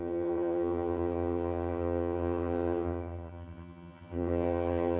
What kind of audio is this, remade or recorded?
remade